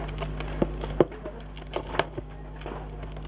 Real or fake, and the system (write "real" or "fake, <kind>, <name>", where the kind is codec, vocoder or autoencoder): real